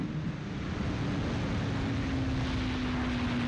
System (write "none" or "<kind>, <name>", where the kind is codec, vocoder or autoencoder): none